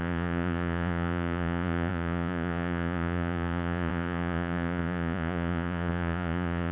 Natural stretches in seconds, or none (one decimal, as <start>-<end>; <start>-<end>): none